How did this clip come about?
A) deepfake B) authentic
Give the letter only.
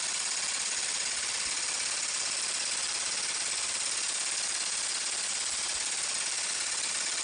B